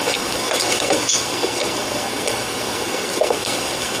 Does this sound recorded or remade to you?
remade